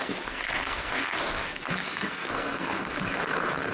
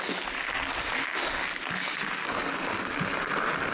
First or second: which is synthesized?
first